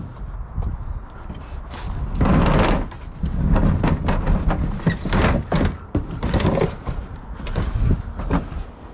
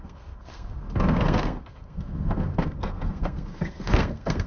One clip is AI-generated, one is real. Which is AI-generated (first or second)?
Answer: second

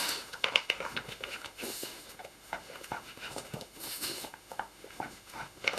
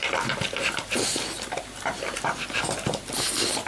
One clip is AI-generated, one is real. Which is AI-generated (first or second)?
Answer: first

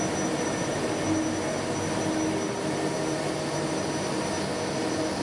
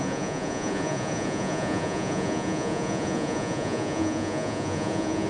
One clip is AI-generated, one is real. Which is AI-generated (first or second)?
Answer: second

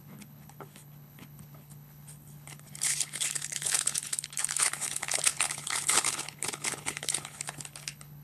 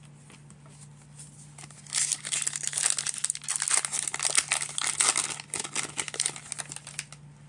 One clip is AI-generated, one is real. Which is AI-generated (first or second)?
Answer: first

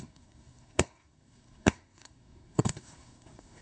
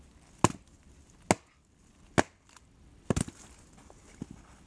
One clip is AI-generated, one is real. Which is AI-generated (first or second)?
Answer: first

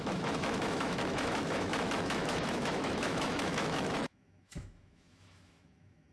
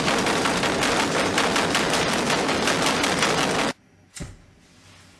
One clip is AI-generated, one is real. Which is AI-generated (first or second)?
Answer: first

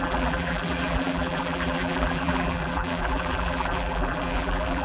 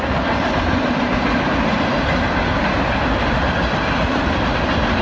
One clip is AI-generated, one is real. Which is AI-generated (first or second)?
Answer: first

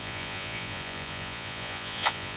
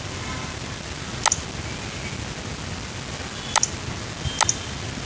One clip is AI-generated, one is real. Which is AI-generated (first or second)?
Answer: first